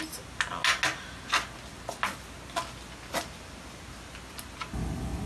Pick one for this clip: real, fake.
real